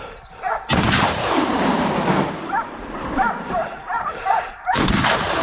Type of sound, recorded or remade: remade